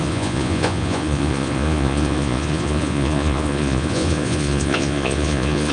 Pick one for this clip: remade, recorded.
remade